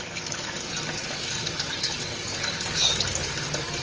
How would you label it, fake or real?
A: fake